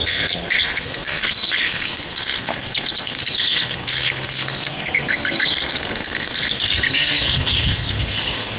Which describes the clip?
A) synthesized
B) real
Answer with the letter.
A